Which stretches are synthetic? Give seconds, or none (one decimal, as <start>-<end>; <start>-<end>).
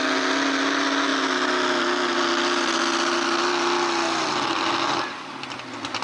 none